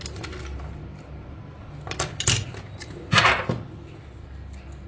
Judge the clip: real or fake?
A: real